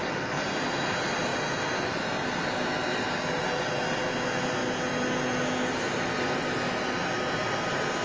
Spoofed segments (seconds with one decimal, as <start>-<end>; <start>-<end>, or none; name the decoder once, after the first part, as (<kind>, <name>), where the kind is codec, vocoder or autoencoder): none

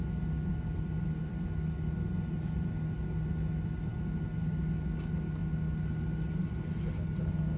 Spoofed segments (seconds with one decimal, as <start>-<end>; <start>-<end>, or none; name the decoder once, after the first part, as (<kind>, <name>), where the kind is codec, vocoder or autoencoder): none

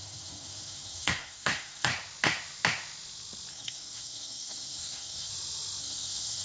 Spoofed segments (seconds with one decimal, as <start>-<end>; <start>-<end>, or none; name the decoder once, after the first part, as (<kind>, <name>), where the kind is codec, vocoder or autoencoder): 0.0-1.9 (codec, SNAC); 3.5-5.3; 5.8-6.4

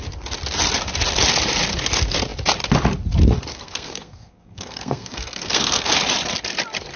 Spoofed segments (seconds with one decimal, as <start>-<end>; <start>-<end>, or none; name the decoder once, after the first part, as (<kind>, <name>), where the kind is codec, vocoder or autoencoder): 3.5-5.9 (codec, SNAC)

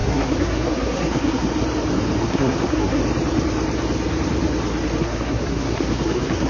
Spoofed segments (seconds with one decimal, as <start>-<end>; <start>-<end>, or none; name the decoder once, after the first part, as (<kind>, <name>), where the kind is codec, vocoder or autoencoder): 0.0-1.5 (codec, SNAC); 2.2-3.0; 5.0-6.5

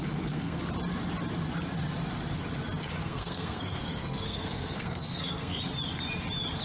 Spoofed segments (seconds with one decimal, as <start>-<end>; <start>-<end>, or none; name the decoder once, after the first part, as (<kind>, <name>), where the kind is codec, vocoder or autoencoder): 0.0-0.6 (codec, SNAC); 3.0-5.6

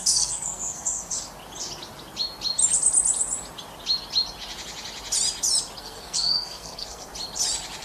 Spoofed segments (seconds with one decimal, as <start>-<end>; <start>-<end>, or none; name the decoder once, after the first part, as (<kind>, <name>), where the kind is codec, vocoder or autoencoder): 0.0-1.1 (codec, SNAC); 5.8-7.1

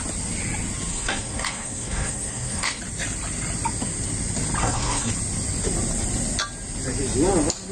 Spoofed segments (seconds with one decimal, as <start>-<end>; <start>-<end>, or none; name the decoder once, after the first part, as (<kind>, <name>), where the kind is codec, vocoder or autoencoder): 0.9-2.8 (codec, SNAC); 4.6-5.1